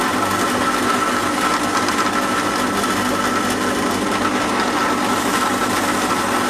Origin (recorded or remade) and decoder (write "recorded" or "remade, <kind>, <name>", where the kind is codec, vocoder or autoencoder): recorded